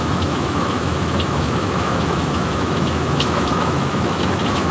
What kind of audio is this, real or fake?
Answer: fake